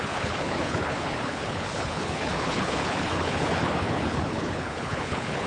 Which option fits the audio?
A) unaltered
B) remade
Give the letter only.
B